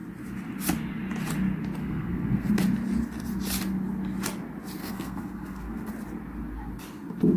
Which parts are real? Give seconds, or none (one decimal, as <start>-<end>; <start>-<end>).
0.0-1.8; 2.5-4.8; 5.9-7.4

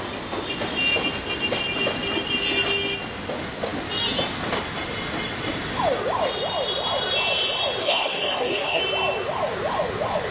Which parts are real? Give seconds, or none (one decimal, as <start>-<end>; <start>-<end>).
0.0-7.8; 8.8-10.3

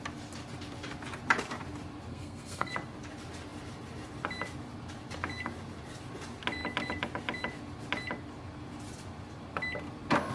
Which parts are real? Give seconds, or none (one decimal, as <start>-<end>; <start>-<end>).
0.0-2.1; 2.7-10.3

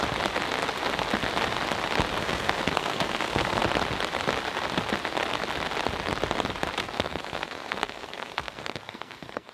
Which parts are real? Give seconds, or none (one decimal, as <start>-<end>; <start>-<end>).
0.0-2.2; 3.6-6.8

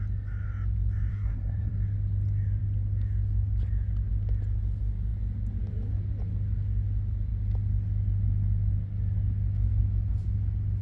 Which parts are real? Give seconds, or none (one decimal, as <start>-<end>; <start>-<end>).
0.0-1.1; 1.7-10.8